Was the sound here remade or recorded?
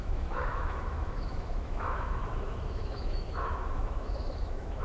remade